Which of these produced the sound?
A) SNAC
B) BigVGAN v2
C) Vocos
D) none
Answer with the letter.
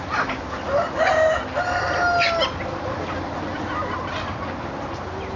D